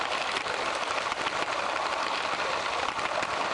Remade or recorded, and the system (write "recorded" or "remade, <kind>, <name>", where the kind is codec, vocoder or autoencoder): recorded